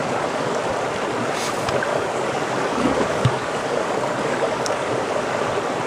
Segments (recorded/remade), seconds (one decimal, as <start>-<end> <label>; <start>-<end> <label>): 0.0-0.6 remade; 0.6-1.9 recorded; 1.9-5.4 remade; 5.4-5.9 recorded